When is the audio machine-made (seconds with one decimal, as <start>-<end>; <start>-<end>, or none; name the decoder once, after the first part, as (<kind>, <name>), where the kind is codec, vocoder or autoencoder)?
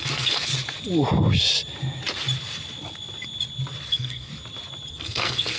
0.0-0.5 (codec, SNAC); 3.9-4.3; 4.9-5.6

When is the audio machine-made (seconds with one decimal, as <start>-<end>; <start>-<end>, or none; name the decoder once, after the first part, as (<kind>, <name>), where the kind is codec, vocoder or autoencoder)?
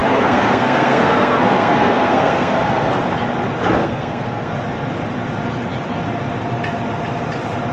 0.0-2.9 (codec, SNAC); 3.8-4.5